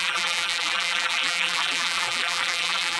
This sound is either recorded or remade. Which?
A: remade